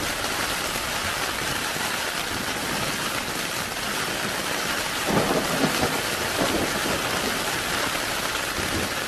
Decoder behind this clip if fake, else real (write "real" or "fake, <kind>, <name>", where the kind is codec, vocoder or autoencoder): fake, vocoder, BigVGAN v2